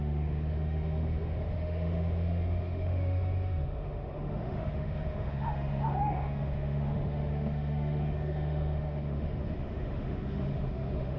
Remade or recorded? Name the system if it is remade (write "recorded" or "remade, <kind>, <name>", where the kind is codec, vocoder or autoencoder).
remade, autoencoder, DAC-VAE